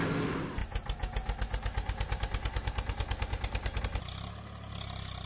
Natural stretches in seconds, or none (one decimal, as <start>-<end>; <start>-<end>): 0.0-5.3